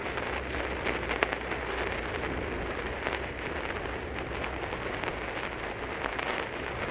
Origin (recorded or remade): recorded